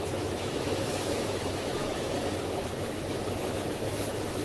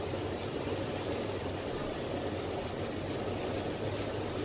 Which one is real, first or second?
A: second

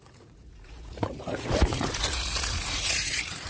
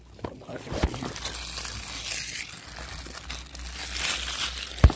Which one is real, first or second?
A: second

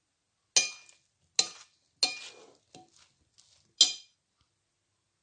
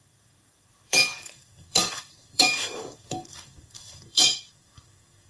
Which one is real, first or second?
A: first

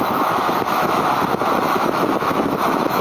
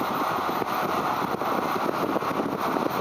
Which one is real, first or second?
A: second